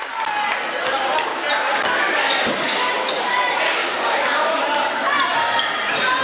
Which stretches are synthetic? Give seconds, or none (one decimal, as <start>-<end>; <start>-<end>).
1.7-2.9; 3.8-4.6